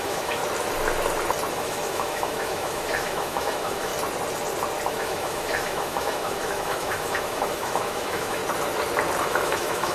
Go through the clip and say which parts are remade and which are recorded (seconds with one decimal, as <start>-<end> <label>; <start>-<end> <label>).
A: 0.0-0.4 remade; 0.4-1.5 recorded; 1.5-3.9 remade; 3.9-4.9 recorded; 4.9-8.4 remade; 8.4-9.2 recorded; 9.2-9.9 remade

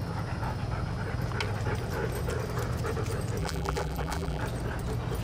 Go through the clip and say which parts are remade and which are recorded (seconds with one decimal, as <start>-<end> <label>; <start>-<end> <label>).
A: 0.0-3.4 recorded; 3.4-4.4 remade; 4.4-5.2 recorded

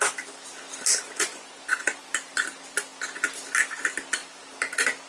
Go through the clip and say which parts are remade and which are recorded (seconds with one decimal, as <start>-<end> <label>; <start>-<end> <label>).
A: 0.0-1.3 recorded; 1.3-2.1 remade; 2.1-5.1 recorded